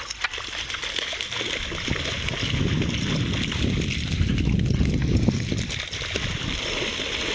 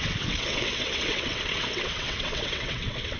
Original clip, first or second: first